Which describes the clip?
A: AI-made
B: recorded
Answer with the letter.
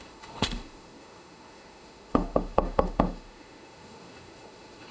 A